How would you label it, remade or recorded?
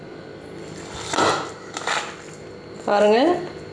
recorded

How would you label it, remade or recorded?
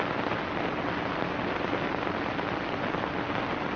recorded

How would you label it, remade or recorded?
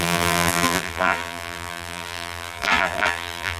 remade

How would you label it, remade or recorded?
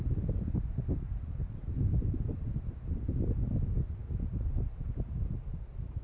recorded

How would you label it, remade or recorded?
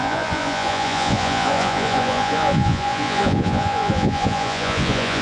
remade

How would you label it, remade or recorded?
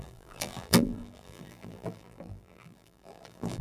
remade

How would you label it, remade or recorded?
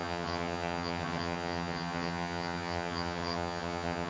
remade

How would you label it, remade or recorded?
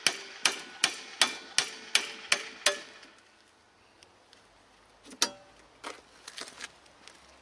recorded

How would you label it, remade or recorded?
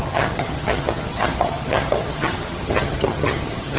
remade